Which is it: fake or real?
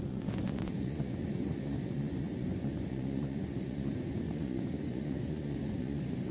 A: fake